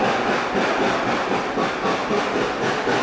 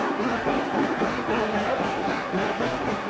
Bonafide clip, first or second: first